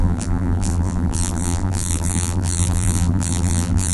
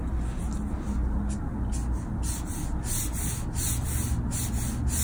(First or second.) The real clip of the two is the second